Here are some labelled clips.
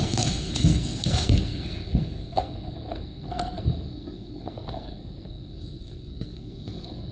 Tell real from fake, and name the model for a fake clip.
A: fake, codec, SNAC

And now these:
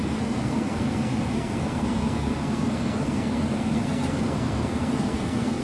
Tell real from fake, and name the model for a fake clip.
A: fake, codec, SNAC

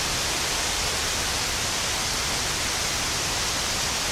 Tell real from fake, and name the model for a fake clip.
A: real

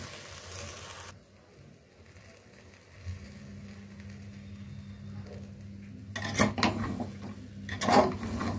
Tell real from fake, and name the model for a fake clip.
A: real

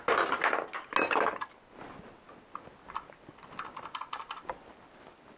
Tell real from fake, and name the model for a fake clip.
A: real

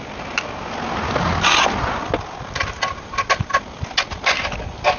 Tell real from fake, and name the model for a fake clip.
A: real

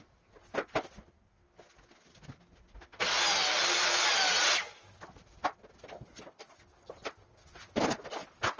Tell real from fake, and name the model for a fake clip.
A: real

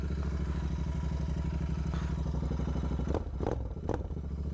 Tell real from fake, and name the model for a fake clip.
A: real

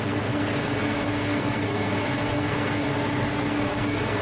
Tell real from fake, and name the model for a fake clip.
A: fake, codec, SNAC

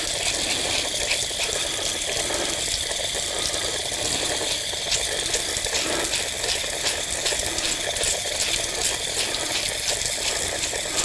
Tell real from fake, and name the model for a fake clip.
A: real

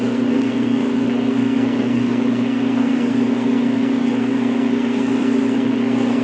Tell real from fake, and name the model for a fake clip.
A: fake, codec, SNAC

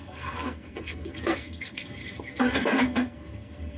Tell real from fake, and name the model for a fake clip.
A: fake, codec, SNAC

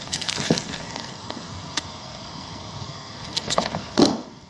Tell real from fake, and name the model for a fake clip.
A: fake, codec, SNAC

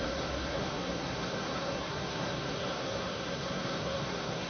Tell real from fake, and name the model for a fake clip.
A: fake, codec, SNAC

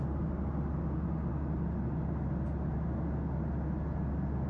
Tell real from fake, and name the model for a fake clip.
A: real